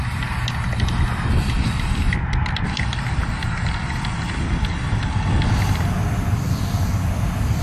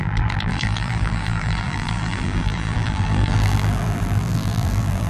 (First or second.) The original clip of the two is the first